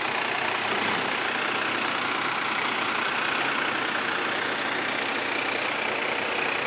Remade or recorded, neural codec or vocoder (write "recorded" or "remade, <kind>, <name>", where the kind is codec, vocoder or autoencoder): recorded